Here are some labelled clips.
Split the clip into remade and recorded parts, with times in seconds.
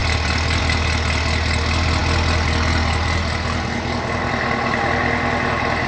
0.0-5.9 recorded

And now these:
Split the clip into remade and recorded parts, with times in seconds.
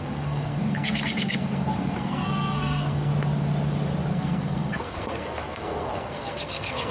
0.0-3.1 remade; 3.1-4.1 recorded; 4.1-6.9 remade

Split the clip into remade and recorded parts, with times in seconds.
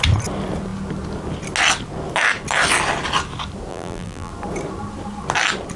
0.0-3.7 recorded; 3.7-4.3 remade; 4.3-5.8 recorded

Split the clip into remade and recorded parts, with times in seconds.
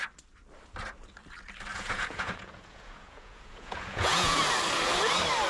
0.0-1.7 recorded; 1.7-4.4 remade; 4.4-5.5 recorded